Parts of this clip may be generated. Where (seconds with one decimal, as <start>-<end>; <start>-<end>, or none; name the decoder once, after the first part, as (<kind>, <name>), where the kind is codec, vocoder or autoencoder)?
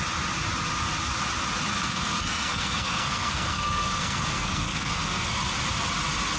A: 1.7-5.3 (codec, SNAC)